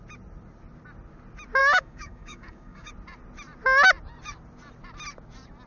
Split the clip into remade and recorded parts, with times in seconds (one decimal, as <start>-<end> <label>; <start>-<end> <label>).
0.0-1.6 recorded; 1.6-2.9 remade; 2.9-5.7 recorded